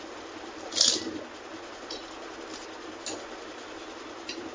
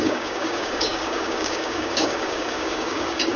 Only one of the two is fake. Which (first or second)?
second